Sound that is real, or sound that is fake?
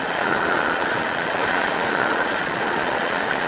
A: fake